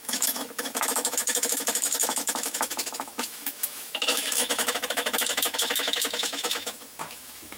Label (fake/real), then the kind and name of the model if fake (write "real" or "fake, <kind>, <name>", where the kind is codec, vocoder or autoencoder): fake, autoencoder, DAC-VAE